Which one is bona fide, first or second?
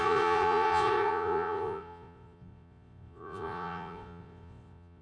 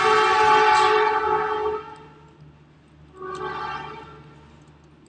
second